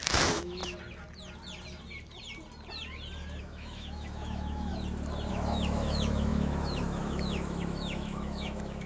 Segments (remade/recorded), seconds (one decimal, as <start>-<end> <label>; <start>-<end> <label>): 0.0-0.6 remade; 0.6-3.4 recorded; 3.4-4.7 remade; 4.7-5.3 recorded; 5.3-8.9 remade

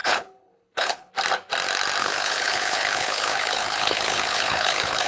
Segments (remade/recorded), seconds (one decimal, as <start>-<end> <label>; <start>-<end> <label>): 0.0-1.1 remade; 1.1-2.0 recorded; 2.0-5.1 remade